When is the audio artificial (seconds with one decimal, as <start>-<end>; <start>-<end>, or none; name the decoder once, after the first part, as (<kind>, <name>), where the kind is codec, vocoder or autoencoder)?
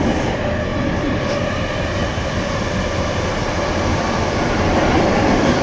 0.7-1.3 (vocoder, BigVGAN v2); 2.0-2.7; 3.9-5.6